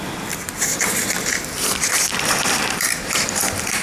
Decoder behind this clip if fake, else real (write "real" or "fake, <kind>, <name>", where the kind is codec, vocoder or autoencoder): fake, vocoder, BigVGAN v2